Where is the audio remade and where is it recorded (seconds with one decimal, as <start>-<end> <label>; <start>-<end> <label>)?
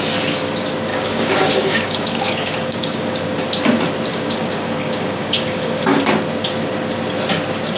0.0-0.9 recorded; 0.9-3.2 remade; 3.2-4.1 recorded; 4.1-6.0 remade; 6.0-7.8 recorded